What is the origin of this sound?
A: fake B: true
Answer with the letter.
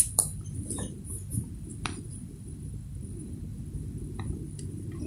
A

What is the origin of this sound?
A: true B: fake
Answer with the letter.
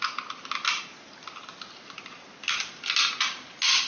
A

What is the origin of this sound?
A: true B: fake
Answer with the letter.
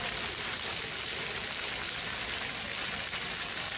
A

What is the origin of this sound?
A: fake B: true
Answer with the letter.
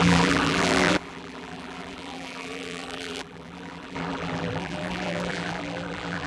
A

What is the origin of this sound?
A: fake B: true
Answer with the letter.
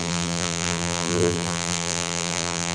A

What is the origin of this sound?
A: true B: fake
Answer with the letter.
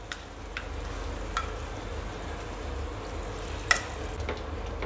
A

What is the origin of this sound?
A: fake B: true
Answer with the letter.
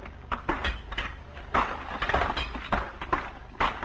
B